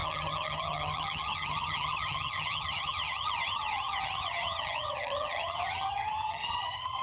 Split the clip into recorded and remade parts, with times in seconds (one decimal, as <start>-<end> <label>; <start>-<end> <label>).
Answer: 0.0-7.0 remade